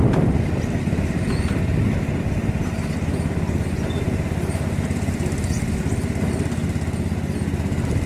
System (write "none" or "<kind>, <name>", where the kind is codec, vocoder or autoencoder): none